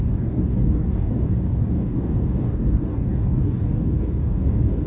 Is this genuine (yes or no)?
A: no